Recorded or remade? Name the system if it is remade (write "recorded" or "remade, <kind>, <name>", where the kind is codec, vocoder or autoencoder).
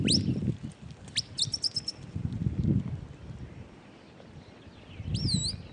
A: recorded